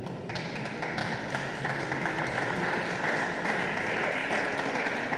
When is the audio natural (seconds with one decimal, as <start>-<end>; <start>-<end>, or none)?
0.0-1.0; 2.2-5.2